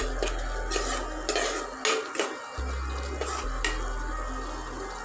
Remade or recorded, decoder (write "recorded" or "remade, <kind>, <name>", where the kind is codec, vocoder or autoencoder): recorded